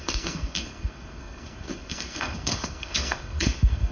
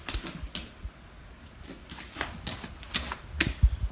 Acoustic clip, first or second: second